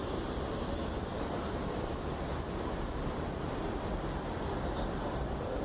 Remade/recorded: remade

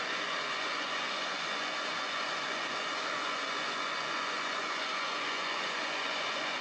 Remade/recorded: remade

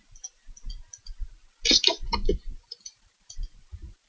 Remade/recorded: recorded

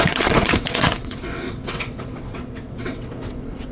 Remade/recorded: remade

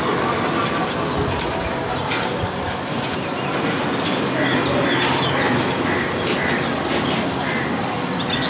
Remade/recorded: recorded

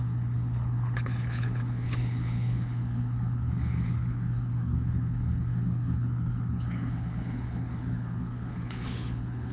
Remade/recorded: remade